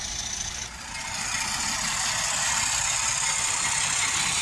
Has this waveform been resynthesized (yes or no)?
no